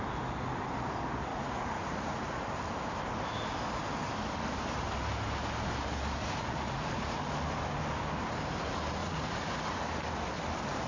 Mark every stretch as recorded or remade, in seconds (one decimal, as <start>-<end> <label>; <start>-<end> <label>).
0.0-1.3 recorded; 1.3-2.4 remade; 2.4-6.2 recorded; 6.2-7.2 remade; 7.2-9.0 recorded; 9.0-9.8 remade; 9.8-10.9 recorded